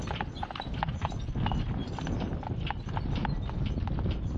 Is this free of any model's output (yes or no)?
yes